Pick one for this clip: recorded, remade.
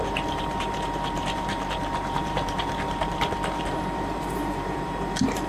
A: remade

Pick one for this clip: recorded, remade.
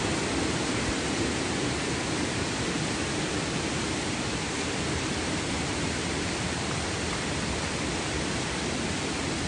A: remade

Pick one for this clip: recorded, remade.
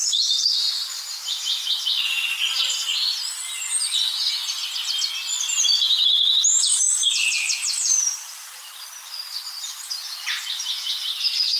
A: recorded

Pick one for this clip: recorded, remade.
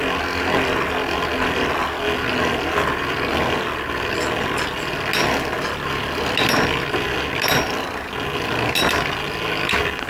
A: recorded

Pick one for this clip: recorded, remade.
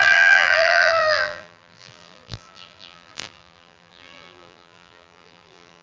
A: remade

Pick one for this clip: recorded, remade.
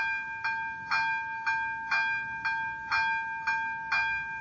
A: recorded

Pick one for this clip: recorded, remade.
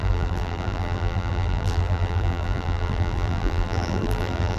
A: remade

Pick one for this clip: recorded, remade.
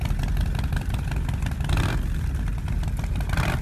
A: recorded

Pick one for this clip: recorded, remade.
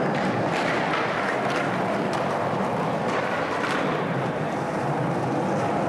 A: recorded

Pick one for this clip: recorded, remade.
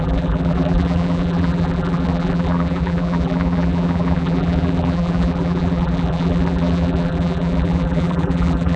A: remade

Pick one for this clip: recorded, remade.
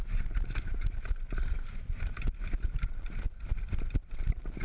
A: remade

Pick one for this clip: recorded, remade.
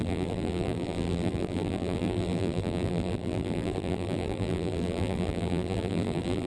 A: remade